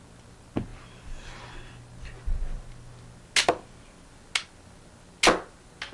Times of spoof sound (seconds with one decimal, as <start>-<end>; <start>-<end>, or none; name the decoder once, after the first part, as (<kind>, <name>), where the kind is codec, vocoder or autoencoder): none